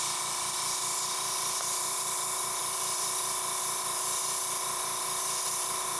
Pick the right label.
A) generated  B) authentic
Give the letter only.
A